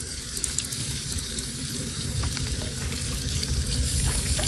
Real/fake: fake